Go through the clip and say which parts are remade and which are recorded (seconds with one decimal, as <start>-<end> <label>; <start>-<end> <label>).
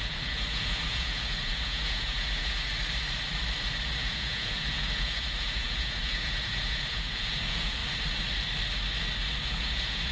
0.0-2.7 remade; 2.7-4.0 recorded; 4.0-7.8 remade; 7.8-9.4 recorded; 9.4-10.1 remade